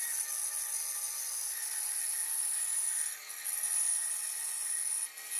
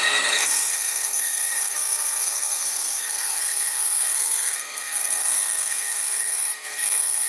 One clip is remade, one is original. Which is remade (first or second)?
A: second